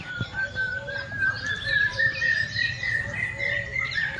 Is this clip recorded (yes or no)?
no